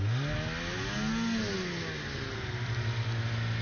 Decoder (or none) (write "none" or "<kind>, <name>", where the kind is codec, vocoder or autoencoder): none